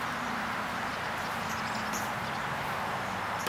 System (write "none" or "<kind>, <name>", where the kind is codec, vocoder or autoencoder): none